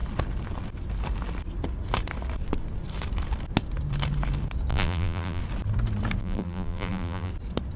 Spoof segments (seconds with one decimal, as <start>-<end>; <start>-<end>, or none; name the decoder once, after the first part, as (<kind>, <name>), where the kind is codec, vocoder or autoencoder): 4.7-5.4 (vocoder, BigVGAN v2); 6.2-7.3